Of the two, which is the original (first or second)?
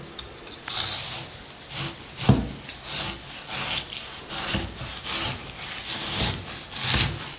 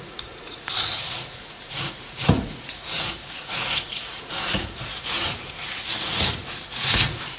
first